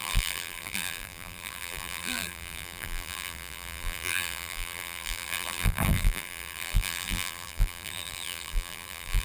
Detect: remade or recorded remade